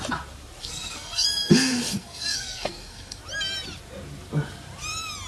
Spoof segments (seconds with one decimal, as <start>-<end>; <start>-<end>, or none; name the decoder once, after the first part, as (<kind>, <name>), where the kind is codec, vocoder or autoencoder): 0.6-3.2 (codec, SNAC)